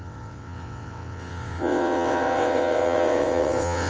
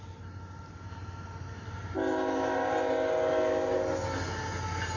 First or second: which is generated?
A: first